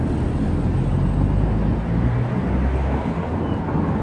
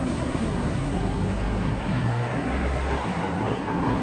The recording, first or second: first